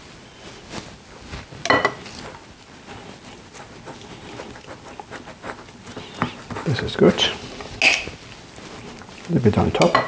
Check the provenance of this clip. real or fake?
real